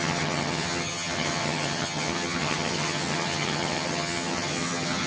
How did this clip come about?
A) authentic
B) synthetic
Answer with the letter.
B